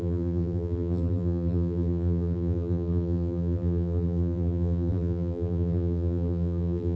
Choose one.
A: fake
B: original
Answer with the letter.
A